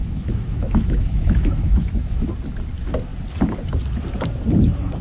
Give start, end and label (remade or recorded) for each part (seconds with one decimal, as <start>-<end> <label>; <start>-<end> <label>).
0.0-2.3 remade; 2.3-5.0 recorded